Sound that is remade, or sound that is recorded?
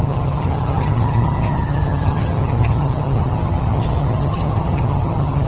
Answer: remade